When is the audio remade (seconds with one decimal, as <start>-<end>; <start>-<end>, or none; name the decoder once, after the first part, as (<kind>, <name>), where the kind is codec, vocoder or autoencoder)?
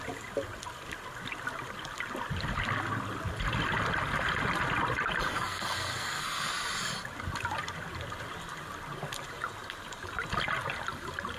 5.3-6.5 (codec, SNAC)